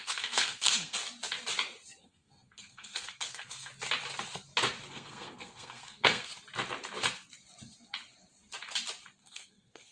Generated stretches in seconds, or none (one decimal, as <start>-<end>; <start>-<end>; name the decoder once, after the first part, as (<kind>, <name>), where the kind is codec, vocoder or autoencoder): 0.0-1.0 (codec, SNAC); 2.0-3.7; 4.9-6.3; 9.2-9.9